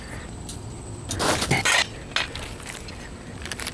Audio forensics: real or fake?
real